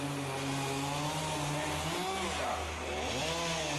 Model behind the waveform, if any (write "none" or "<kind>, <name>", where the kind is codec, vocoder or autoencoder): none